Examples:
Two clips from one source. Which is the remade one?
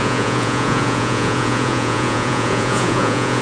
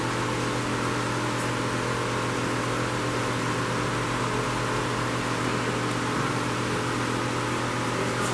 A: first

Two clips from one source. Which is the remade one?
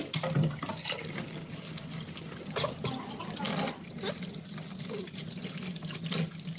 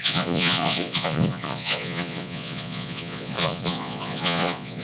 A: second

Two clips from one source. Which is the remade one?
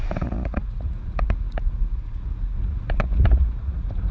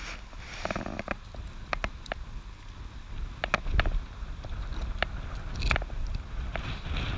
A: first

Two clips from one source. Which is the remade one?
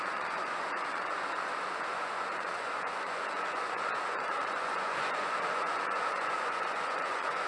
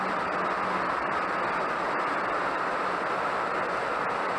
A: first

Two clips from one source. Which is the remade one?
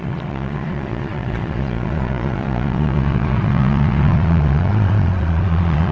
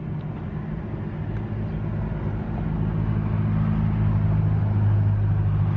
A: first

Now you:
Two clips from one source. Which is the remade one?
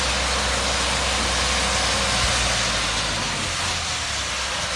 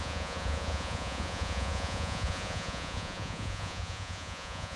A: second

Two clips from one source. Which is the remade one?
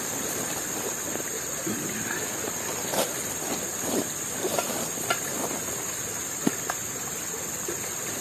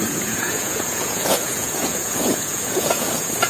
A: second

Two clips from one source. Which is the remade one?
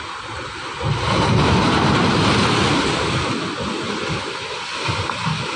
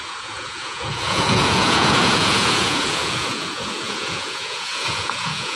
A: second